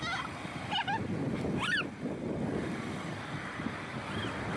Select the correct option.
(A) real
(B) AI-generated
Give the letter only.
A